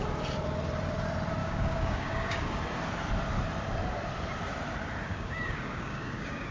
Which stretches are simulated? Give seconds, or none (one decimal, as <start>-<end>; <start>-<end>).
1.4-2.5; 5.1-6.5